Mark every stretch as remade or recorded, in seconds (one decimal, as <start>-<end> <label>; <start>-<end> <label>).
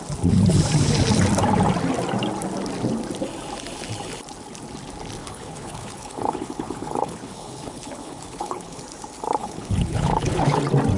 0.0-5.2 recorded; 5.2-8.8 remade; 8.8-9.4 recorded; 9.4-10.6 remade; 10.6-11.0 recorded